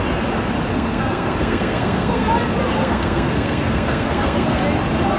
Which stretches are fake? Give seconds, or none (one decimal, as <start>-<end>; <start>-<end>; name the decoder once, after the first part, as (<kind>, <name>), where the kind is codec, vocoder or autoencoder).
0.7-2.3 (codec, SNAC); 2.8-4.6